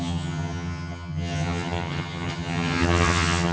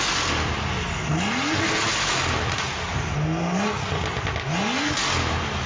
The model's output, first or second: first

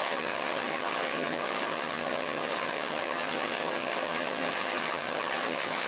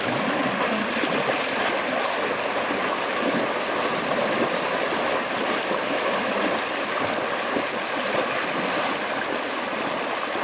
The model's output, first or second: first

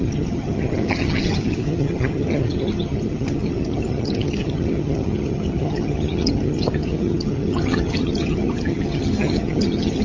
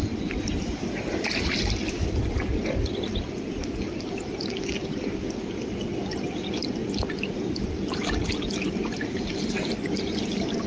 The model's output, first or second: first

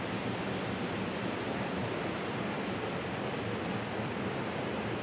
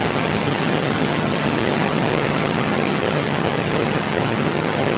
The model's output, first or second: second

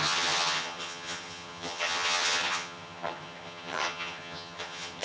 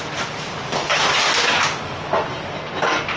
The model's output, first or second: first